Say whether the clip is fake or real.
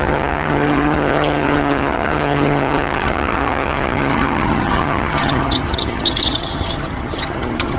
fake